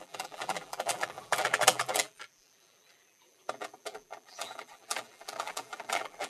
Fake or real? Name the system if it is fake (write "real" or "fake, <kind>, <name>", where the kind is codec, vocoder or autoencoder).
fake, vocoder, BigVGAN v2